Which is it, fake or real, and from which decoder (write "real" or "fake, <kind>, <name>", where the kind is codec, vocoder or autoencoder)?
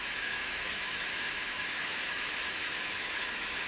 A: fake, autoencoder, DAC-VAE